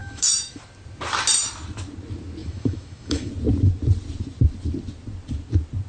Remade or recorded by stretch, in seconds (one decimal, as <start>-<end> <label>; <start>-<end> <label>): 0.0-0.6 remade; 0.6-2.4 recorded; 2.4-3.3 remade; 3.3-5.9 recorded